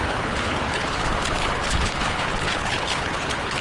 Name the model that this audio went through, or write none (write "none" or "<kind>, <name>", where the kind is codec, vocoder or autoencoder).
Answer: codec, HILCodec